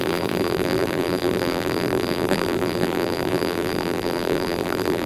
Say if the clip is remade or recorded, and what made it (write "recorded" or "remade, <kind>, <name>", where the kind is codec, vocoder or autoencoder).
remade, vocoder, BigVGAN v2